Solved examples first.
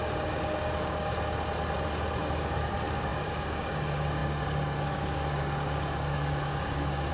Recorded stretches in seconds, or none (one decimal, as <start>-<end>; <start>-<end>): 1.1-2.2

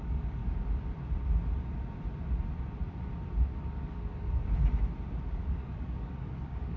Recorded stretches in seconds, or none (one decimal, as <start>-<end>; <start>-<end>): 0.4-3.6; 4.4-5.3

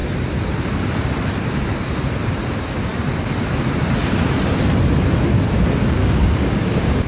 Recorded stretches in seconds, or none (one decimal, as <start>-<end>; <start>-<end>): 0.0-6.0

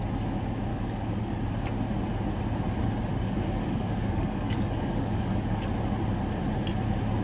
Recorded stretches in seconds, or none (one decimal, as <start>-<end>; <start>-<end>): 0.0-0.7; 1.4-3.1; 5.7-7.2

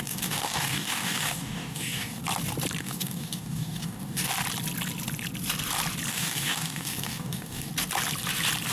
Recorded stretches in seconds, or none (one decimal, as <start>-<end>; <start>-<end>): 2.2-2.8; 4.3-6.1; 7.7-8.7

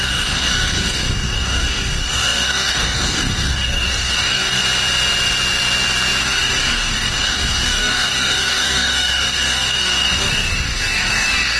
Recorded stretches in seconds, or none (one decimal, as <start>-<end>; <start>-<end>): 4.6-6.2